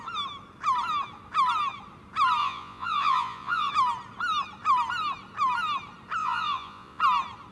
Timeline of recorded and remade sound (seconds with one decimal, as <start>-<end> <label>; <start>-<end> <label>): 0.0-2.4 recorded; 2.4-3.7 remade; 3.7-6.2 recorded; 6.2-7.0 remade; 7.0-7.5 recorded